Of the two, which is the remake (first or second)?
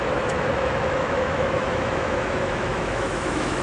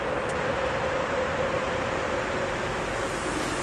first